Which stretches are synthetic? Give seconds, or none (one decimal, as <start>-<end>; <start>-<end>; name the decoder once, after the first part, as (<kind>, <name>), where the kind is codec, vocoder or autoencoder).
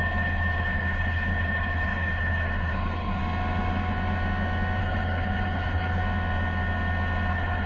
0.0-3.2 (codec, HILCodec); 4.8-6.0; 7.3-7.7